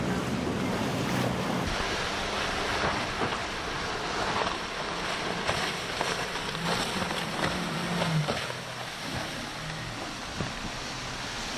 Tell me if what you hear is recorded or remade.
recorded